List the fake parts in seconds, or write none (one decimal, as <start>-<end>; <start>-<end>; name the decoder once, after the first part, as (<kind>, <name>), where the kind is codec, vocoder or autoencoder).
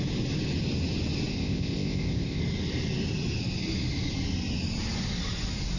1.3-2.4 (codec, ZipCodec)